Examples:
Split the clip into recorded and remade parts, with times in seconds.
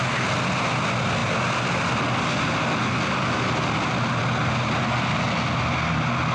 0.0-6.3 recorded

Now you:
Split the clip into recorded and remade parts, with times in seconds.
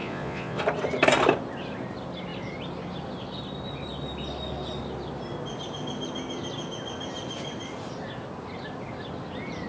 0.0-0.6 remade; 0.6-9.7 recorded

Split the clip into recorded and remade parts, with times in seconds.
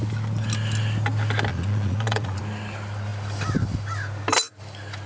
0.0-1.5 recorded; 1.5-2.4 remade; 2.4-5.1 recorded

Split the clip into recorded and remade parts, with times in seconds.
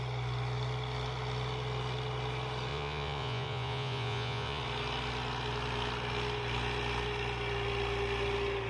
0.0-2.7 recorded; 2.7-4.6 remade; 4.6-8.7 recorded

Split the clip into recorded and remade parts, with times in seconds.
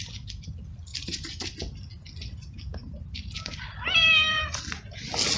0.0-0.9 recorded; 0.9-1.6 remade; 1.6-2.4 recorded; 2.4-4.6 remade; 4.6-5.4 recorded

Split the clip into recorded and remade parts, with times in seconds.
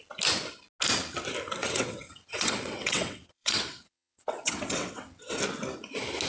0.0-1.6 recorded; 1.6-5.4 remade; 5.4-6.3 recorded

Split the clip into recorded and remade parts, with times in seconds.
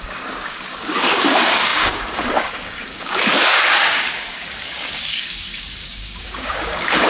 0.0-7.1 remade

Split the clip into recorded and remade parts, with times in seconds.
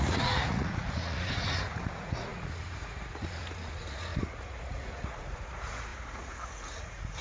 0.0-7.2 remade